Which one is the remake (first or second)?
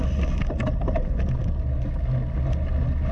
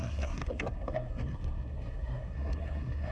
second